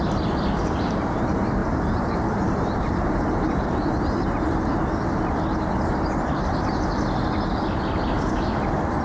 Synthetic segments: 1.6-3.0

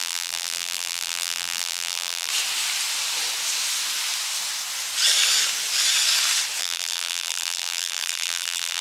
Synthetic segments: 0.0-2.3; 6.6-8.8